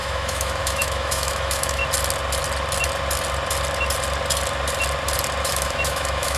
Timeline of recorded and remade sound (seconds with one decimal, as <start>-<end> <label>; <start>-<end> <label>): 0.0-1.8 remade; 1.8-5.4 recorded; 5.4-6.4 remade